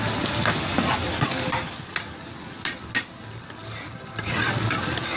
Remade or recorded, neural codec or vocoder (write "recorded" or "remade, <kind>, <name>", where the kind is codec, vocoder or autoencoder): recorded